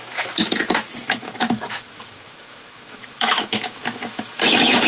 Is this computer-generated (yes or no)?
yes